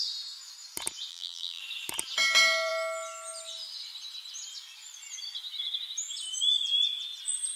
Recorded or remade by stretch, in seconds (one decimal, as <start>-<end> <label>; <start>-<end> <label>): 0.0-1.1 recorded; 1.1-1.6 remade; 1.6-7.6 recorded